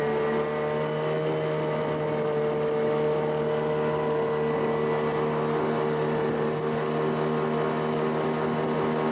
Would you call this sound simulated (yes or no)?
no